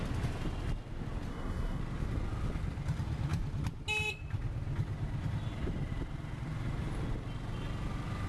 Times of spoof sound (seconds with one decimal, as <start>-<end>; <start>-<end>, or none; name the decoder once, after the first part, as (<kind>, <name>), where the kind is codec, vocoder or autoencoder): 1.3-1.8 (codec, SNAC)